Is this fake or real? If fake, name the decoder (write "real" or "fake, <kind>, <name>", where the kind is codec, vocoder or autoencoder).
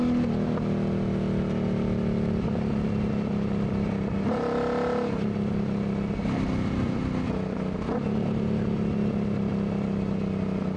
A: real